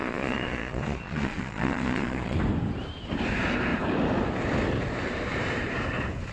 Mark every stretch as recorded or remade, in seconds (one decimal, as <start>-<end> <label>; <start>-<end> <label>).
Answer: 0.0-2.4 remade; 2.4-6.3 recorded